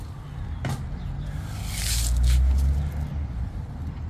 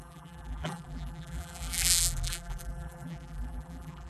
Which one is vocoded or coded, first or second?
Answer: second